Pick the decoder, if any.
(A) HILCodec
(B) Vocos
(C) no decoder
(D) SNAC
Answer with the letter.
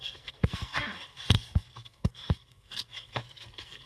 D